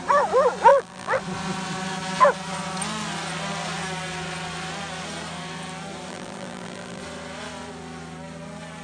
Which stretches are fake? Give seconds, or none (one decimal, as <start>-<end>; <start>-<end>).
0.7-1.2; 6.1-7.0